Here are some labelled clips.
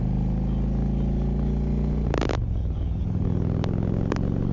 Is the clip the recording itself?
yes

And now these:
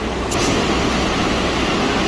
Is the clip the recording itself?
yes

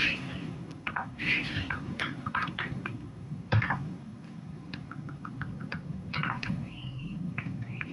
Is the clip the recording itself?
no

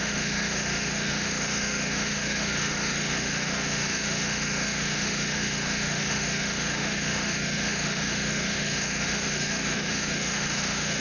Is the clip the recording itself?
no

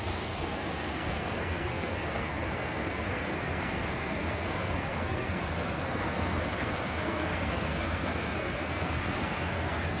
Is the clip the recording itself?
no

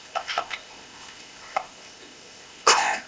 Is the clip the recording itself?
no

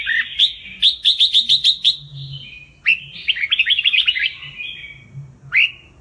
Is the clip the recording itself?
yes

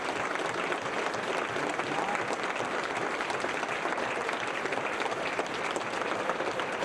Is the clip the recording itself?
yes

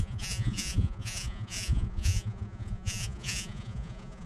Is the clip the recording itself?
no